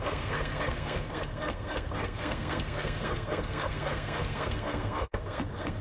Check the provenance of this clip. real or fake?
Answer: fake